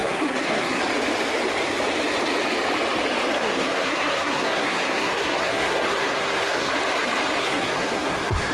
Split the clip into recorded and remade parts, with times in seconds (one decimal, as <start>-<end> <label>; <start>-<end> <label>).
0.0-0.8 remade; 0.8-3.4 recorded; 3.4-6.7 remade; 6.7-7.4 recorded; 7.4-8.5 remade